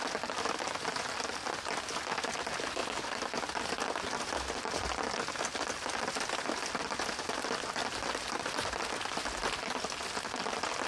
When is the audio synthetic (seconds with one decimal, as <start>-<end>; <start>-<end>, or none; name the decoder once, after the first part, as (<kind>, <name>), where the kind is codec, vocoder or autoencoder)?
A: none